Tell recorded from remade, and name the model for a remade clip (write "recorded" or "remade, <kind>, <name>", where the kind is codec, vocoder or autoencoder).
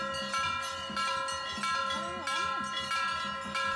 recorded